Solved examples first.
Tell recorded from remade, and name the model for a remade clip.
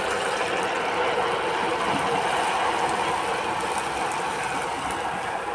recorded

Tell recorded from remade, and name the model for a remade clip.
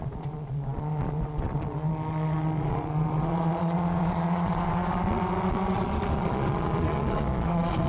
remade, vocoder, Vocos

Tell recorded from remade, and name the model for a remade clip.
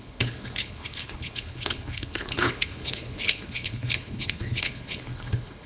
remade, codec, HILCodec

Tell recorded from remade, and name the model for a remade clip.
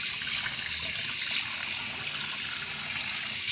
recorded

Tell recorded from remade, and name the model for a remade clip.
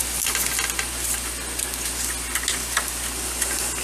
recorded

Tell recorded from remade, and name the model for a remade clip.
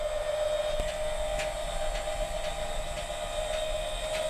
recorded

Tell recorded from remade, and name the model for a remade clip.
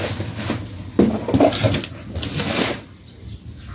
recorded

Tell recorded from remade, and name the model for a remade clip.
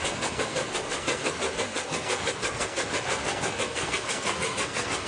remade, codec, SNAC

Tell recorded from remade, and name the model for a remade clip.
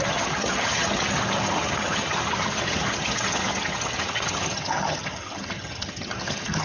remade, vocoder, HiFi-GAN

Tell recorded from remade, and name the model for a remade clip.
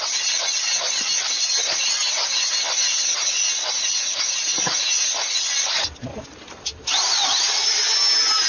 recorded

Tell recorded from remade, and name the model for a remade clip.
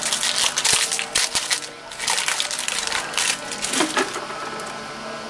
recorded